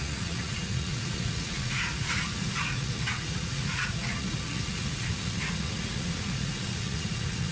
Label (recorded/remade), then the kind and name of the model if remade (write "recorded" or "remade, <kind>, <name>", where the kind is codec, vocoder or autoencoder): remade, vocoder, Vocos